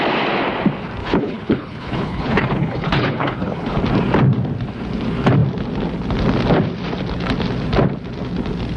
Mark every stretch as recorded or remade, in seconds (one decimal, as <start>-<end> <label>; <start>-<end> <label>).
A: 0.0-1.0 recorded; 1.0-3.8 remade; 3.8-8.8 recorded